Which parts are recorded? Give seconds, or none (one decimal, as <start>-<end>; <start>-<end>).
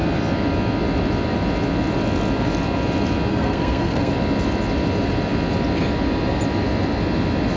0.0-3.3; 4.1-7.6